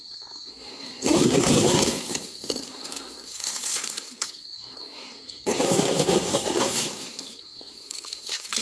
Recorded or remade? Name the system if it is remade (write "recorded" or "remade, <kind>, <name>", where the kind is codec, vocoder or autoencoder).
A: remade, codec, SNAC